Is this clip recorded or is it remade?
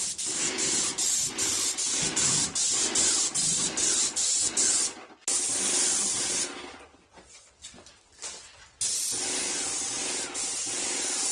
recorded